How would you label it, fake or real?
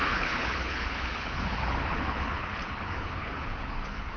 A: fake